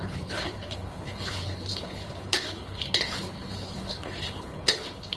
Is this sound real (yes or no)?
no